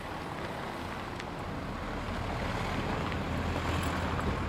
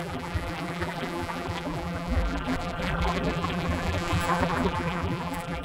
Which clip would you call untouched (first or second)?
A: first